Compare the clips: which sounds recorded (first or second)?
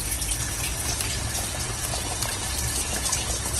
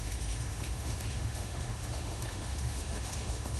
first